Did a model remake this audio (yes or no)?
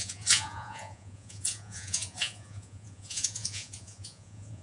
yes